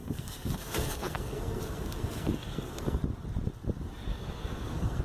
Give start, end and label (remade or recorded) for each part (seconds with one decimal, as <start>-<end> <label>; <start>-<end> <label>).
0.0-3.0 remade; 3.0-4.1 recorded; 4.1-5.0 remade